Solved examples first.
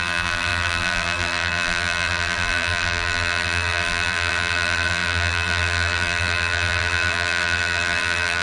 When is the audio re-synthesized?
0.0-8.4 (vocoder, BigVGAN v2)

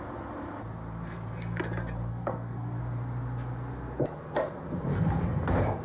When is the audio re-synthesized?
2.1-2.8 (codec, SNAC)

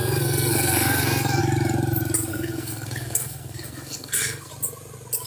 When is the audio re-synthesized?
0.0-1.4 (codec, SNAC); 2.3-4.5

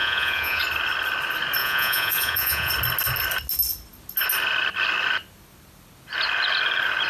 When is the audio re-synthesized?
0.0-0.6 (vocoder, Vocos); 1.6-2.7

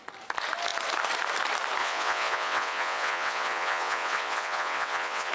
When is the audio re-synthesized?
1.8-5.3 (vocoder, WaveNeXt)

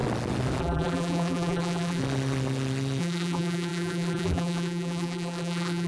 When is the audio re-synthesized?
0.6-2.0 (vocoder, BigVGAN v2); 3.0-5.9

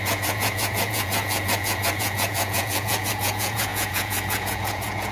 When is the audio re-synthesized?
0.0-5.1 (vocoder, Vocos)

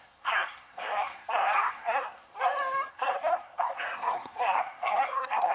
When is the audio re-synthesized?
0.0-2.3 (codec, SNAC); 2.9-5.5